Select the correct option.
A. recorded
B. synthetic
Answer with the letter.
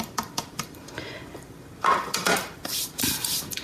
B